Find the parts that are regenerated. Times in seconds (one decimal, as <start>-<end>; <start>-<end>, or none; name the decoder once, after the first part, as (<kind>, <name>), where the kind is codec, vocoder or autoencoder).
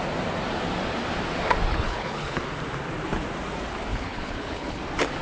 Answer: 1.7-2.4 (codec, HILCodec); 3.9-4.8